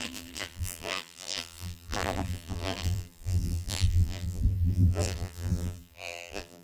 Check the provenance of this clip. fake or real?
fake